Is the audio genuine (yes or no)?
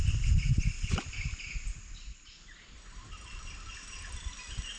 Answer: yes